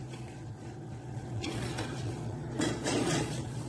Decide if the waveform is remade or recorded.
remade